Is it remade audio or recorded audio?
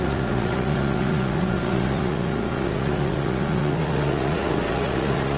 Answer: remade